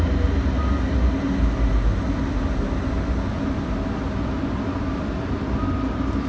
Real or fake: real